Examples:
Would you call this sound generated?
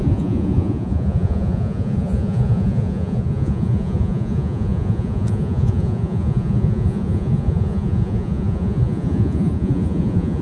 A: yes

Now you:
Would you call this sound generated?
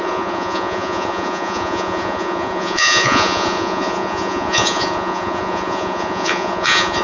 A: yes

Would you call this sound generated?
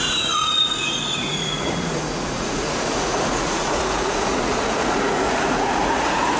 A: yes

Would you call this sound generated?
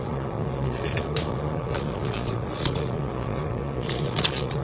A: yes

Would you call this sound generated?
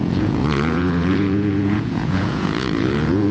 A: yes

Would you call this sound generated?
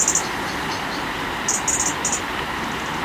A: no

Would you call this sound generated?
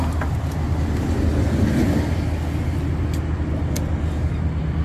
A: no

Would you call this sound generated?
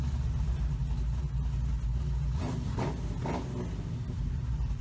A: no